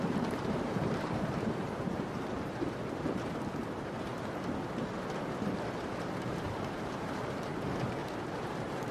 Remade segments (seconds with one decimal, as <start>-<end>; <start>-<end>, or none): 0.0-4.1; 6.0-7.5; 8.4-8.9